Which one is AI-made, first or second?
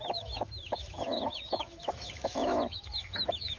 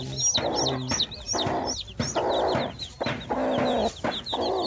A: first